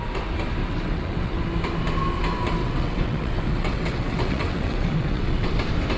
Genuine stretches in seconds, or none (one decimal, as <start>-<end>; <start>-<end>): 0.0-0.6; 1.4-2.6; 5.5-6.0